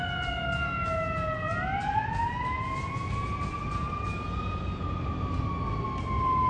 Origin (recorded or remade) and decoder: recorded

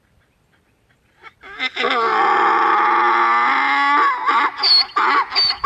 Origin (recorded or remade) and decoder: recorded